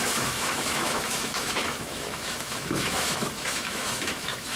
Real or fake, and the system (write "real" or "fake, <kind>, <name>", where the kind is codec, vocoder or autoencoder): fake, autoencoder, DAC-VAE